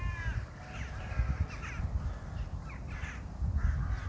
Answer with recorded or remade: recorded